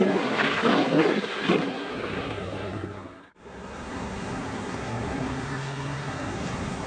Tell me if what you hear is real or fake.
fake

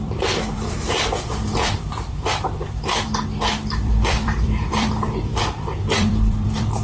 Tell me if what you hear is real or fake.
fake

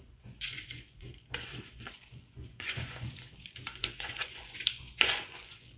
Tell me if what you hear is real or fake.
fake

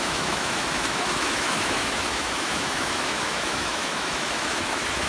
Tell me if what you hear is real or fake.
fake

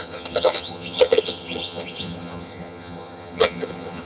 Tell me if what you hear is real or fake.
fake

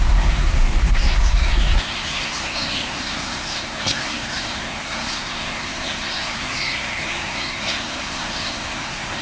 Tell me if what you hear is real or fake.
fake